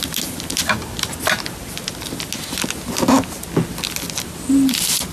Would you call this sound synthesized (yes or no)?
no